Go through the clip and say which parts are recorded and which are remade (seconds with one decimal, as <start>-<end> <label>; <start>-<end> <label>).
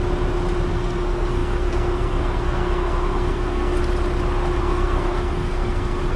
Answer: 0.0-0.7 recorded; 0.7-3.8 remade; 3.8-4.6 recorded; 4.6-6.2 remade